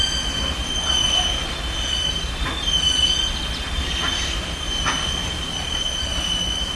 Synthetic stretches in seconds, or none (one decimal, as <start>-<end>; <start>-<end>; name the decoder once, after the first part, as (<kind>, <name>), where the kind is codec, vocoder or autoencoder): none